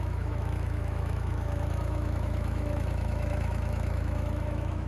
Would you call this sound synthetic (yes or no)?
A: yes